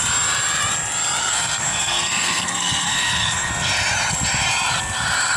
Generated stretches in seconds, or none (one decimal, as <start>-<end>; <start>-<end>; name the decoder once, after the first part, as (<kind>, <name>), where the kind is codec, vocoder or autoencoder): 1.2-3.5 (codec, SNAC)